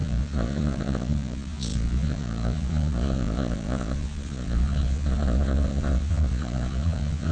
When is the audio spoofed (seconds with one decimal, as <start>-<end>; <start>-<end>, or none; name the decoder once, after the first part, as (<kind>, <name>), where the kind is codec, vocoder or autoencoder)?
0.0-7.3 (vocoder, Vocos)